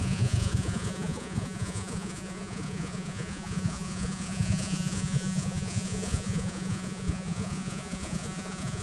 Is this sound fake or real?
fake